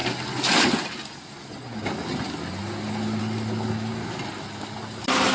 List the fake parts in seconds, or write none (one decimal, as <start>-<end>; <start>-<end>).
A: none